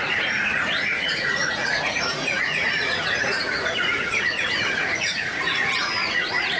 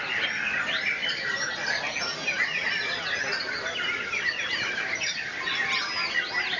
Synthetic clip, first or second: first